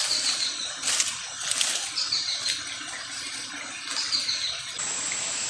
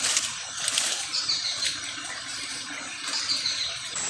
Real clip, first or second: first